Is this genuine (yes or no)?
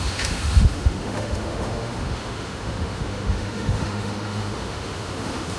no